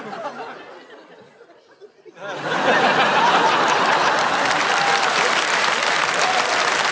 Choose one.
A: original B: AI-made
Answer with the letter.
A